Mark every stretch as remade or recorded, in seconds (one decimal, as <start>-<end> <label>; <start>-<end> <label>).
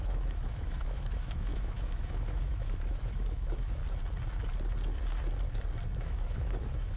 0.0-3.8 remade; 3.8-6.0 recorded; 6.0-7.0 remade